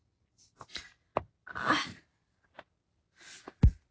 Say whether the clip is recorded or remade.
recorded